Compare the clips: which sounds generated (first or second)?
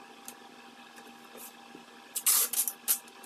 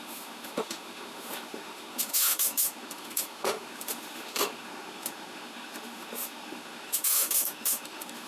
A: second